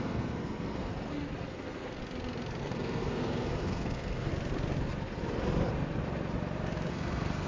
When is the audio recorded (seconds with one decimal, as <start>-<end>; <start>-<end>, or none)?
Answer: 0.9-1.5; 2.0-2.6; 4.3-6.9

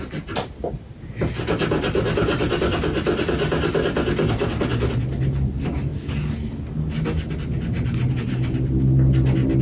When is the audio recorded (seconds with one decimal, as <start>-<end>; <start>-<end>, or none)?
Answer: 0.0-9.6

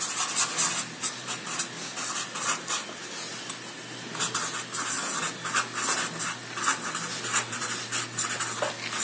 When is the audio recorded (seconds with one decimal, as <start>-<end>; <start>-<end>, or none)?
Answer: 0.0-9.0

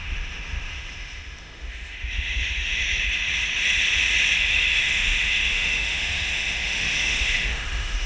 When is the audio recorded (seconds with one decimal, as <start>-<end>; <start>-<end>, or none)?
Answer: 2.8-4.8

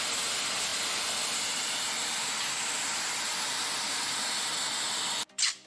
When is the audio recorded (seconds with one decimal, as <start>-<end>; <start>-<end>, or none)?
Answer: 0.0-5.7

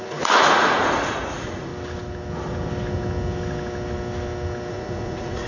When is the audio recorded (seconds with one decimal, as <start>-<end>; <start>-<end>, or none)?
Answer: 1.7-4.7

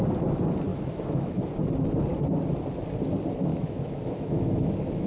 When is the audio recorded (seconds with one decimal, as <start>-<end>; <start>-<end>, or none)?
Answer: 0.0-0.7; 1.4-3.5